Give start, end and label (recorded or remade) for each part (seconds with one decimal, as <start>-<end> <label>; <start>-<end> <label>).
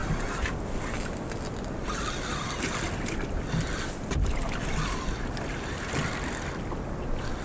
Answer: 0.0-7.4 recorded